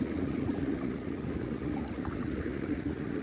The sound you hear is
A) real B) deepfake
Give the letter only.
B